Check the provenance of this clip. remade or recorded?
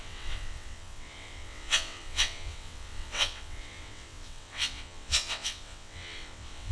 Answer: remade